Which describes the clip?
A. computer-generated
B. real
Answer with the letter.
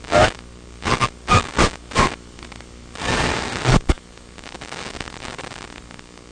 A